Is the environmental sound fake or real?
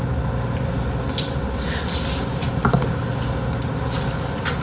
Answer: real